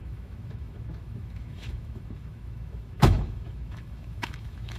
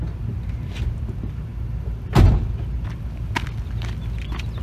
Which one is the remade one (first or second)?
first